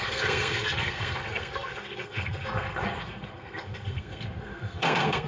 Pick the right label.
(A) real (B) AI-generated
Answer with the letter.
B